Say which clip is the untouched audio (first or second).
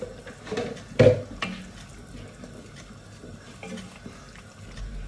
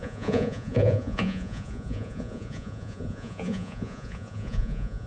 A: first